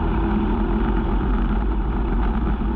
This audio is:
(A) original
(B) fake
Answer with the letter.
A